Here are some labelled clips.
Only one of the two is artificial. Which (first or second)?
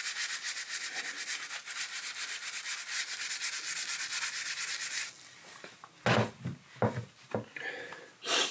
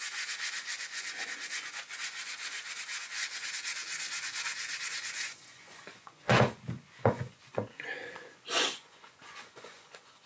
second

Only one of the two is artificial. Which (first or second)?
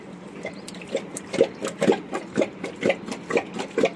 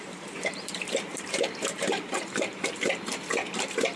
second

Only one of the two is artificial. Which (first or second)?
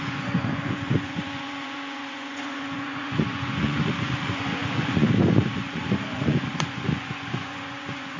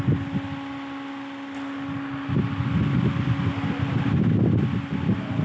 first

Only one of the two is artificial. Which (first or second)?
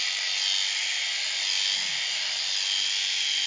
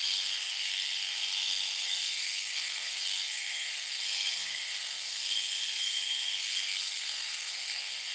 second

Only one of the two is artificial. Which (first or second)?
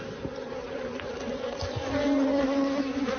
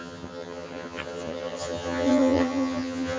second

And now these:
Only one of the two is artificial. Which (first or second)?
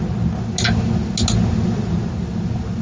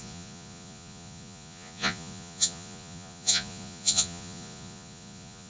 second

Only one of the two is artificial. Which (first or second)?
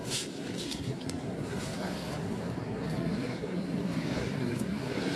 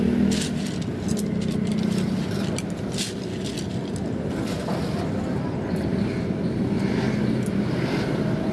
first